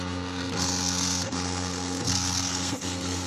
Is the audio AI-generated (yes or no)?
yes